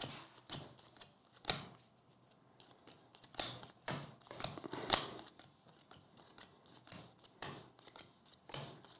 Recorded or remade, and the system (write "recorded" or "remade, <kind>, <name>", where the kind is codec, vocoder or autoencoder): remade, vocoder, BigVGAN v2